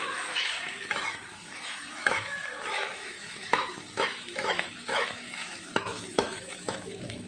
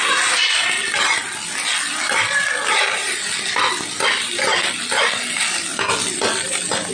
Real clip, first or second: second